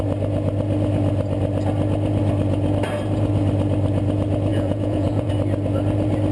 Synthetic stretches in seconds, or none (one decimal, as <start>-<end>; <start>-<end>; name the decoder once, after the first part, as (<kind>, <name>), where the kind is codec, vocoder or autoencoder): 4.5-5.3 (vocoder, Vocos)